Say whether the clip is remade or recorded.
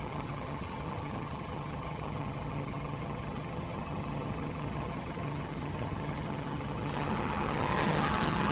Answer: remade